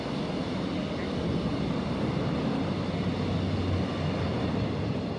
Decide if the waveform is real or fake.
real